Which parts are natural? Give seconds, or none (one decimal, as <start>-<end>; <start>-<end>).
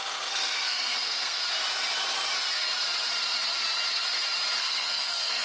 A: 1.4-4.6